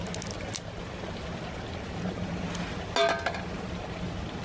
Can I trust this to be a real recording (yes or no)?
yes